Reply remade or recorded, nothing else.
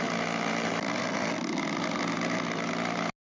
recorded